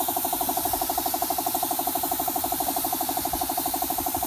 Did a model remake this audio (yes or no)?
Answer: yes